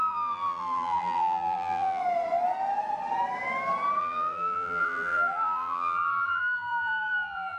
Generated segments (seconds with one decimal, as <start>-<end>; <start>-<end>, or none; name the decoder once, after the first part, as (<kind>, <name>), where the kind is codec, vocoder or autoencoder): 0.0-2.0 (vocoder, BigVGAN v2); 4.0-7.6